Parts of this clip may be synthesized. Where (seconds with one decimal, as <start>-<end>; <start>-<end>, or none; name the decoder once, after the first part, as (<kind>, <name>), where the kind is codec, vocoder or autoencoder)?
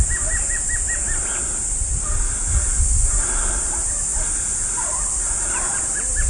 none